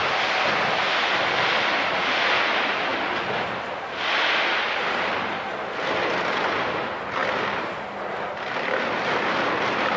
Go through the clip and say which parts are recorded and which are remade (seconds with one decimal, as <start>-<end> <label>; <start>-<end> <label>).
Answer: 0.0-10.0 recorded